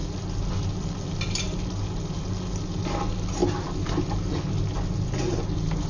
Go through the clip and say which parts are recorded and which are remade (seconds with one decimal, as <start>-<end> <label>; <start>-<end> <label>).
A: 0.0-5.9 recorded